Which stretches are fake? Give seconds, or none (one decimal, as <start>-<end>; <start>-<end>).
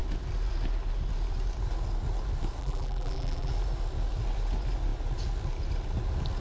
2.6-3.5